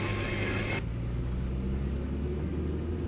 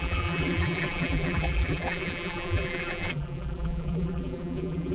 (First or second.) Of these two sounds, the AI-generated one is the second